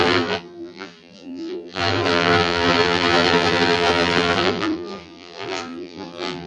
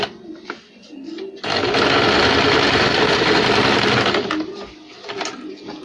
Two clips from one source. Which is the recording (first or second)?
second